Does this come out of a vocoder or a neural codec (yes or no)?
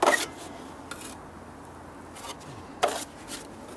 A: no